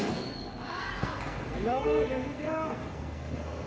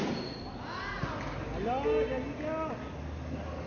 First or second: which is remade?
first